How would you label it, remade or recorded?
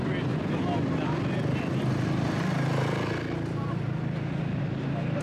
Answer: recorded